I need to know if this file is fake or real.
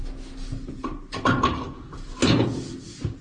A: real